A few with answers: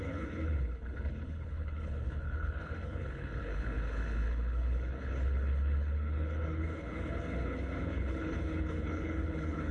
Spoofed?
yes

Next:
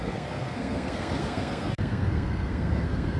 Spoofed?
yes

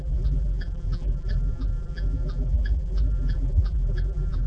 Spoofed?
yes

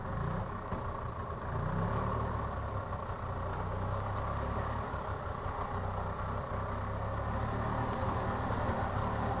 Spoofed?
no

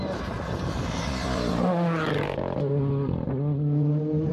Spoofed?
no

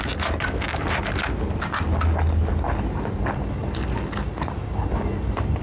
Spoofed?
no